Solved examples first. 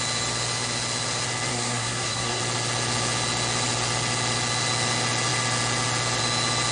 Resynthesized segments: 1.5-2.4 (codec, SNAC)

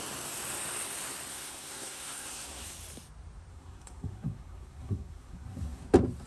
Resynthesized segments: 1.3-2.7 (codec, SNAC); 3.5-5.8

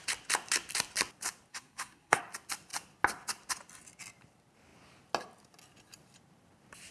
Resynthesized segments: 1.5-2.2 (codec, SNAC)

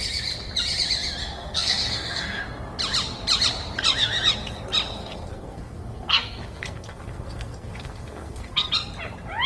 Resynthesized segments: 1.2-2.4 (codec, SNAC); 5.0-8.7

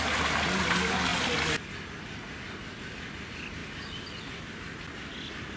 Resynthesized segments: none